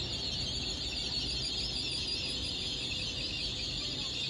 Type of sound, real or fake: real